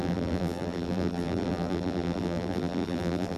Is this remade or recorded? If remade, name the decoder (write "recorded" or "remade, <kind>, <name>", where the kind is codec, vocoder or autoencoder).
remade, vocoder, BigVGAN v2